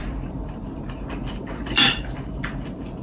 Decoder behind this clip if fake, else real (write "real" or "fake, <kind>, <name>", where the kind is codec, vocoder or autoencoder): fake, vocoder, BigVGAN v2